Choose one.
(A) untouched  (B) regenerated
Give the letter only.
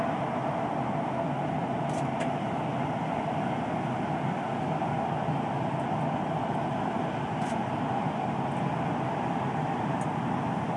A